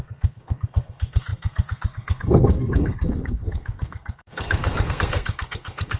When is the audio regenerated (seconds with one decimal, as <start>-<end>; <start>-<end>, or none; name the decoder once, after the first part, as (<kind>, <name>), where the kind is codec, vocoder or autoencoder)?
0.0-6.0 (codec, SNAC)